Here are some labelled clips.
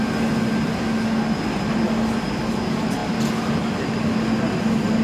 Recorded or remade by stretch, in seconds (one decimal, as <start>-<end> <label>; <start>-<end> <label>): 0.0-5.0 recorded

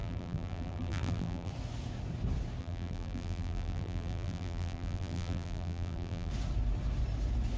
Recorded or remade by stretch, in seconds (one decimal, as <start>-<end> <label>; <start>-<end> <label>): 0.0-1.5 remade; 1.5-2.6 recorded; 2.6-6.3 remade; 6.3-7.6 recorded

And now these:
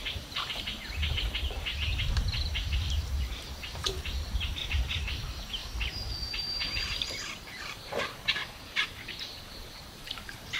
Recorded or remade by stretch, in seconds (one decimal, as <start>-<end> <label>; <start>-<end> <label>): 0.0-5.6 remade; 5.6-6.3 recorded; 6.3-8.4 remade; 8.4-9.2 recorded; 9.2-10.6 remade

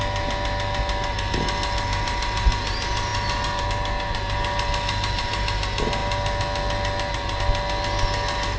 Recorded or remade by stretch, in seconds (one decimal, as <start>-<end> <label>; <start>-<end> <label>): 0.0-8.6 recorded

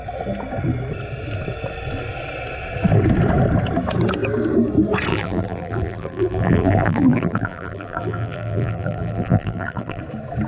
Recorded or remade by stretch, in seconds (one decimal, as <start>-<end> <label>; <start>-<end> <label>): 0.0-5.1 recorded; 5.1-10.0 remade; 10.0-10.5 recorded

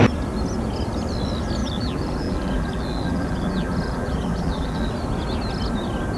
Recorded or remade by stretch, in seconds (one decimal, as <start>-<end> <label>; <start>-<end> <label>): 0.0-1.6 recorded; 1.6-4.9 remade; 4.9-6.2 recorded